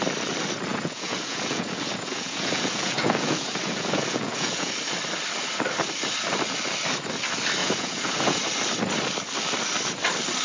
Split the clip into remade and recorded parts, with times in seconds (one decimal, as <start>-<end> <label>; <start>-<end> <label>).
0.0-0.7 recorded; 0.7-4.7 remade; 4.7-7.6 recorded; 7.6-8.4 remade; 8.4-10.4 recorded